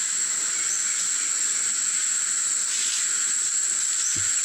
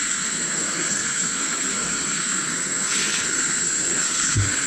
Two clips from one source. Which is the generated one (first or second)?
second